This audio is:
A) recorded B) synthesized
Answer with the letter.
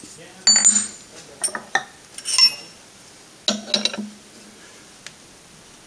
A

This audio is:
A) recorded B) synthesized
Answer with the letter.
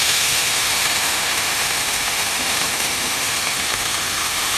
B